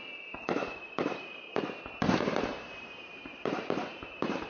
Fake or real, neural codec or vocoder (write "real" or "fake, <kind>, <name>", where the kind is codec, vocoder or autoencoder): fake, vocoder, BigVGAN v2